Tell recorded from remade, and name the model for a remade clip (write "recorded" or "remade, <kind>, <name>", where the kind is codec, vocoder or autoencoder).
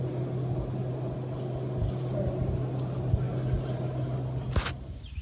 recorded